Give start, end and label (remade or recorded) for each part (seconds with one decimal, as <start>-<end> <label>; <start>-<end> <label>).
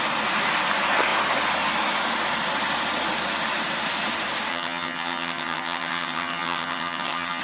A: 0.0-4.5 recorded; 4.5-7.4 remade